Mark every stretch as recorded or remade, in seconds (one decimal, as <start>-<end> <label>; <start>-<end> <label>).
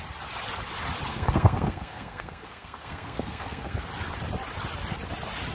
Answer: 0.0-1.1 recorded; 1.1-3.9 remade; 3.9-5.5 recorded